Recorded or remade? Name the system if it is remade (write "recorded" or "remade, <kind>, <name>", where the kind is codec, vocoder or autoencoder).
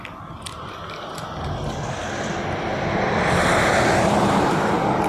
recorded